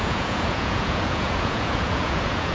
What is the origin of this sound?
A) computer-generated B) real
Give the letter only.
A